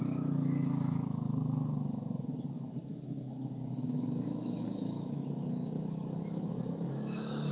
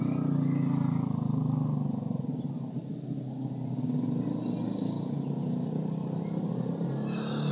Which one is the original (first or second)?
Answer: second